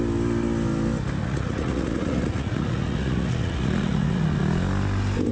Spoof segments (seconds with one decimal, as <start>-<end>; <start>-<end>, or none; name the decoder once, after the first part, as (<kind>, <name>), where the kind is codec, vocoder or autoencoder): 1.2-4.4 (vocoder, Vocos)